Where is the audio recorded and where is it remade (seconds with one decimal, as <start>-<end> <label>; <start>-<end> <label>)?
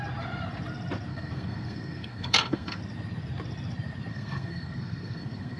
0.0-1.1 recorded; 1.1-2.8 remade; 2.8-4.1 recorded; 4.1-5.6 remade